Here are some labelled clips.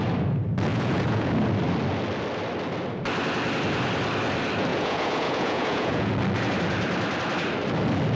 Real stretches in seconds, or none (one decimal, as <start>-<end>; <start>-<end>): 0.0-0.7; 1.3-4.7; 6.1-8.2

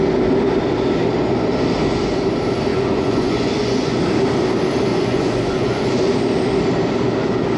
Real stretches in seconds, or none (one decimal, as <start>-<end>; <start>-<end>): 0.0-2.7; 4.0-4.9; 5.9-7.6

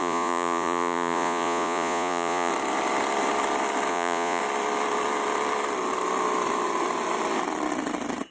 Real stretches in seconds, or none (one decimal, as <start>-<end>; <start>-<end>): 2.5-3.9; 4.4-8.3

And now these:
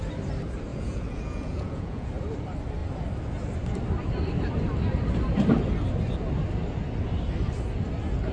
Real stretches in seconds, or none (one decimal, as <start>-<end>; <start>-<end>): 0.0-0.7; 2.1-8.3

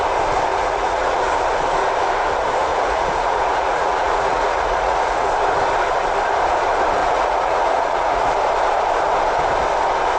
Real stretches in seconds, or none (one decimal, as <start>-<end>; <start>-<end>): 0.0-0.5; 1.2-2.7; 5.3-7.0; 8.3-10.2

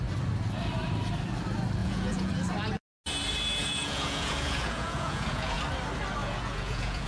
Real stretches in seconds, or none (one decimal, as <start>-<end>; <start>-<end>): 0.0-1.8; 2.3-3.6; 5.6-6.2

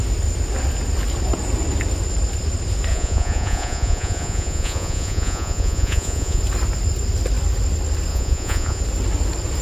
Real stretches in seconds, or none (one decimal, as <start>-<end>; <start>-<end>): 0.0-2.9; 6.4-8.1; 8.8-9.6